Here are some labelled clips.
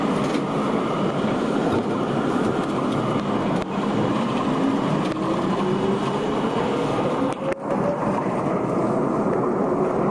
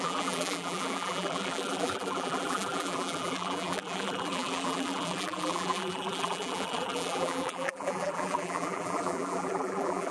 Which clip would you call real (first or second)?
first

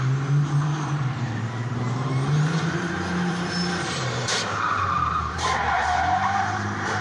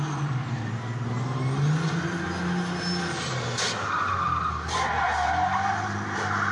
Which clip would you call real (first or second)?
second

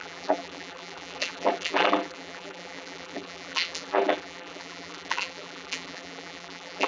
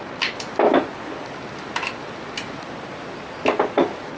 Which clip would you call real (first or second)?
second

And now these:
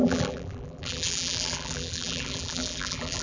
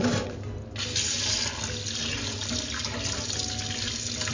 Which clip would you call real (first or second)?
second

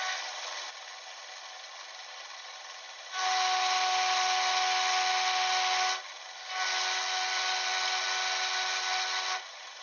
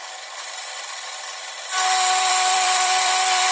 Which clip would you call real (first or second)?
first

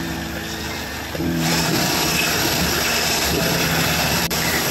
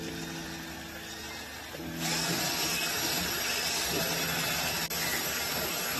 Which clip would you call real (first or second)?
second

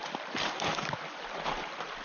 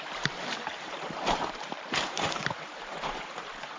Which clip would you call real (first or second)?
first